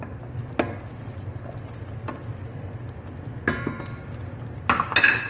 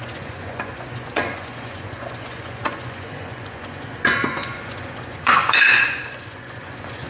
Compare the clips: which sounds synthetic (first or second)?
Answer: second